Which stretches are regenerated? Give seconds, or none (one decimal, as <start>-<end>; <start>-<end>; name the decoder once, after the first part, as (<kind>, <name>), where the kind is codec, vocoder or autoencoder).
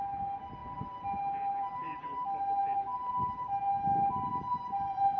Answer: 1.8-3.1 (vocoder, BigVGAN v2)